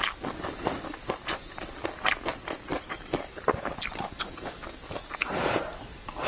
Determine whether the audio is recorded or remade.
recorded